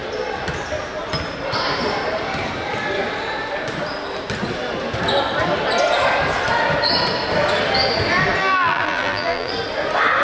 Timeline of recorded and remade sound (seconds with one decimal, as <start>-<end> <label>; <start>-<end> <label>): 0.0-8.4 recorded; 8.4-9.5 remade; 9.5-10.2 recorded